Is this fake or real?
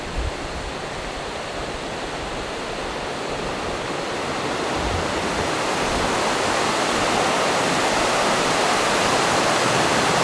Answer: real